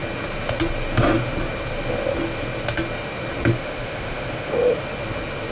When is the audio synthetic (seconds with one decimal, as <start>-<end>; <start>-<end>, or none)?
3.5-4.8